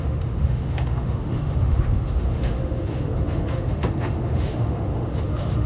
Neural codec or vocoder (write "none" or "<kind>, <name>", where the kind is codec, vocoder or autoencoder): autoencoder, DAC-VAE